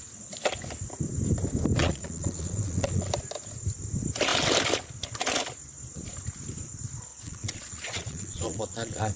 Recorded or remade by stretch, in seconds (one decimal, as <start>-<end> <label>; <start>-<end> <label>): 0.0-1.8 recorded; 1.8-3.1 remade; 3.1-7.1 recorded; 7.1-9.2 remade